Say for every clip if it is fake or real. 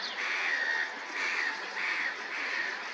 real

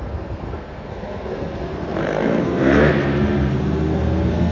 fake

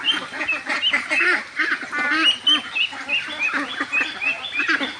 real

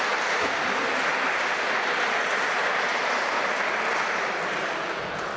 real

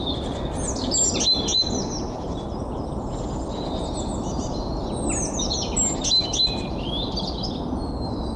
real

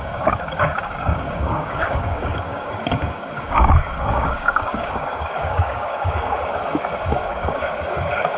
fake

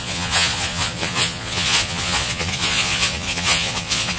fake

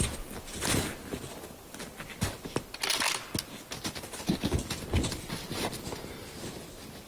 real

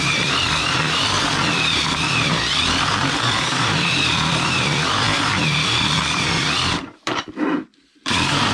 fake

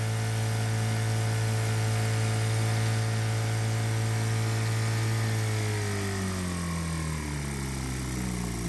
real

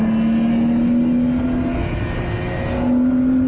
real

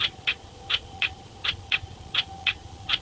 fake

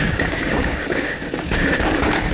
fake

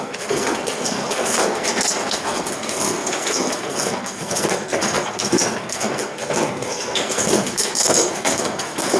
fake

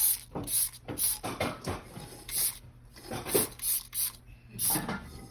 real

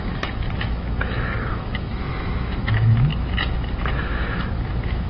fake